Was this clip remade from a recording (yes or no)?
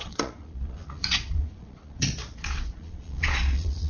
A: yes